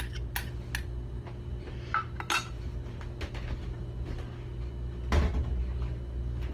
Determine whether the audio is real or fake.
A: real